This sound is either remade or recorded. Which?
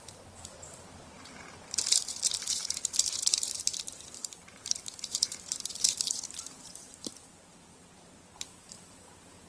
remade